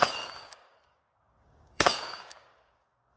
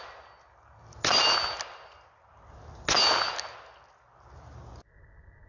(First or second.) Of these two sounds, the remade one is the first